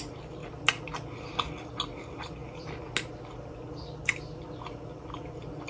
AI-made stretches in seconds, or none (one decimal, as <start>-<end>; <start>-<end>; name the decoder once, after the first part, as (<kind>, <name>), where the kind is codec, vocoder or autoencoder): 0.4-1.5 (vocoder, BigVGAN v2)